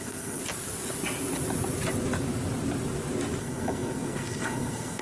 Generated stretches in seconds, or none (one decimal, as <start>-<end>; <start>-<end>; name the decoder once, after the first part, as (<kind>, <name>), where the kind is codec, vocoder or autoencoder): 0.0-0.4 (codec, SNAC); 3.4-5.0